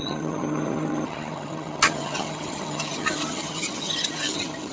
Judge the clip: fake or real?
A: fake